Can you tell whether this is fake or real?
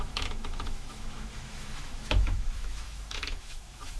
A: fake